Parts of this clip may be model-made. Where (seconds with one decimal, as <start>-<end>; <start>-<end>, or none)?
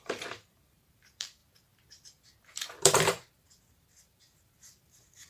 0.0-1.4; 2.8-5.3